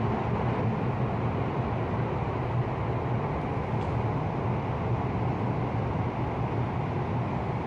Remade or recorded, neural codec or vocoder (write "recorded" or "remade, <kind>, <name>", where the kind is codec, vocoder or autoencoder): recorded